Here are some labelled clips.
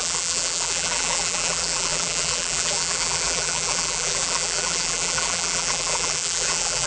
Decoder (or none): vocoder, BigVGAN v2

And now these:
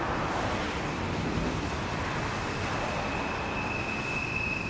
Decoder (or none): none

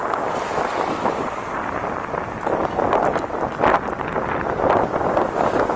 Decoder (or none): none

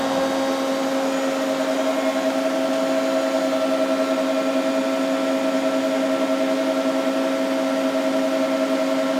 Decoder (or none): none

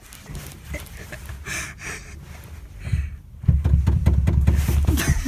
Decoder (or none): none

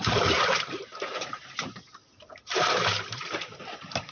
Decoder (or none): vocoder, BigVGAN v2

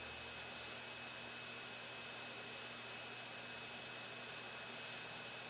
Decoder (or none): none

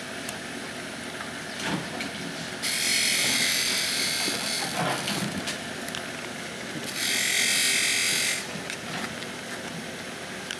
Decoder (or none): none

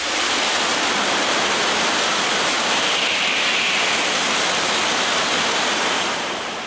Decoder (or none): none